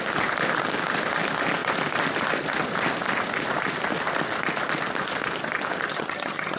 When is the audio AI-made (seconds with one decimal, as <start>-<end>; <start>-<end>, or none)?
5.9-6.6